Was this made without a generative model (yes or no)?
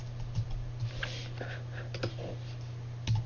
yes